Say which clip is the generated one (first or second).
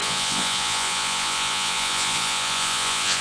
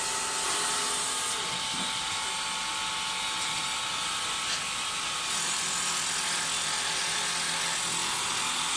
first